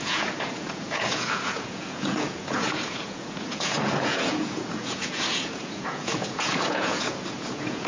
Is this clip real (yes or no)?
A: no